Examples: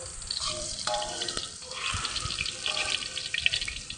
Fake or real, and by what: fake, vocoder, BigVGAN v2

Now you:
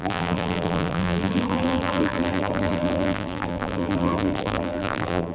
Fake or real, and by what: fake, vocoder, BigVGAN v2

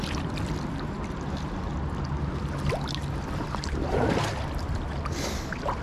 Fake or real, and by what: real